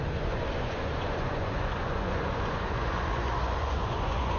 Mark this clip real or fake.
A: fake